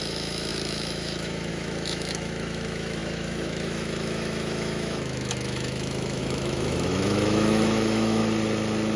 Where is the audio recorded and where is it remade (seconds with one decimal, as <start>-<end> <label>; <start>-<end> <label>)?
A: 0.0-8.2 remade; 8.2-9.0 recorded